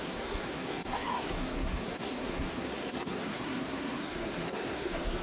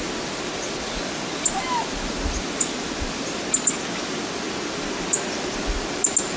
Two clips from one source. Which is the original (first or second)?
second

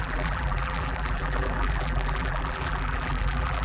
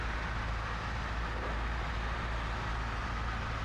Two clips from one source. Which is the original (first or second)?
second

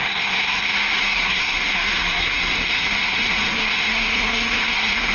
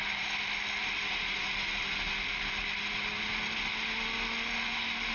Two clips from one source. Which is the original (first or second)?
second